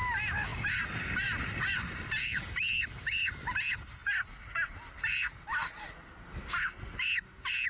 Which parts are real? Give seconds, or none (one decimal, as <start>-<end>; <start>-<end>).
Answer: 0.0-7.7